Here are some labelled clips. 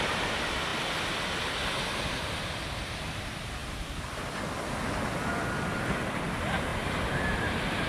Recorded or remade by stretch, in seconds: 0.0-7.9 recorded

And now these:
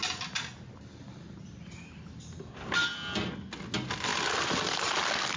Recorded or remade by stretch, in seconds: 0.0-5.4 recorded